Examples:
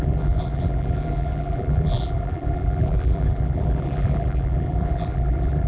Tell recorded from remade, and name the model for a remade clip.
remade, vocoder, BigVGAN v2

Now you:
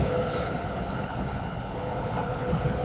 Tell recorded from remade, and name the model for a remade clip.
remade, codec, HILCodec